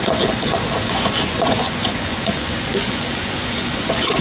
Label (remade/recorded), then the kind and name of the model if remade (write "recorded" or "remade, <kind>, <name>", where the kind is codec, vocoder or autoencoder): remade, vocoder, Vocos